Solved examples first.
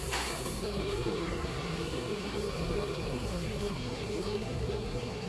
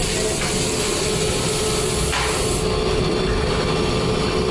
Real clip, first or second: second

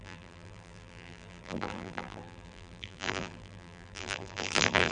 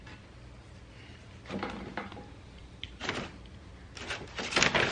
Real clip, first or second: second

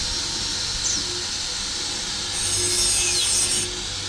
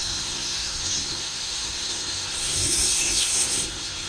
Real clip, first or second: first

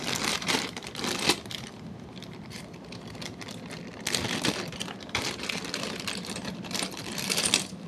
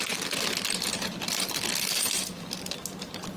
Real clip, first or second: second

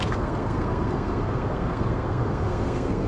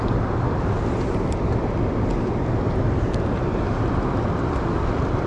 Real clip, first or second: second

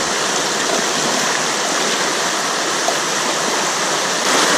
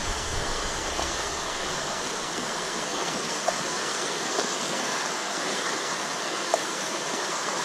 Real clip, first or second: first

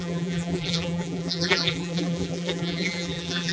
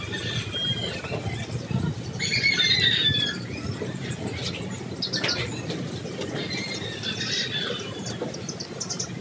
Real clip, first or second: second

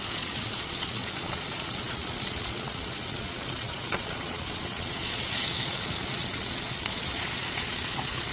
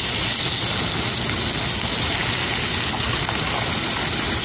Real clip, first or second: second